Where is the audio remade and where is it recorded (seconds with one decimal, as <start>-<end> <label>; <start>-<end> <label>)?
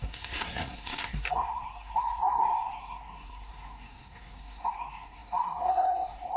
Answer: 0.0-6.4 remade